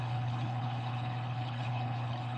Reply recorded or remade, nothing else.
remade